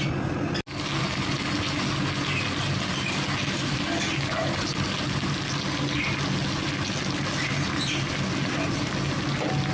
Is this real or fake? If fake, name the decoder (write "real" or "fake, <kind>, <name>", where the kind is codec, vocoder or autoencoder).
real